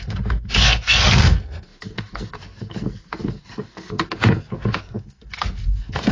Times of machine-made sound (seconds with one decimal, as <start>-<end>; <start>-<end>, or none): 0.0-6.1